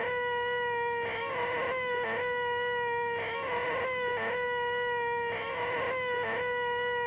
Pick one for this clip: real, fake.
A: real